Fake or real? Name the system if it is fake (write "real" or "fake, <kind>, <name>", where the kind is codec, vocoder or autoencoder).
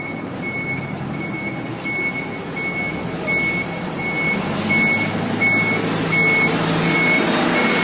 real